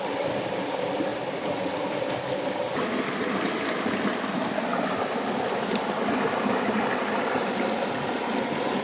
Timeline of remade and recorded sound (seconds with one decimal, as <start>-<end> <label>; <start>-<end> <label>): 0.0-1.1 recorded; 1.1-2.1 remade; 2.1-8.8 recorded